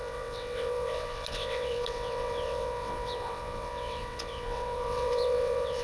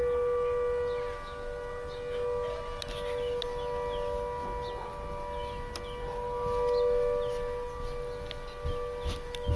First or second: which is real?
second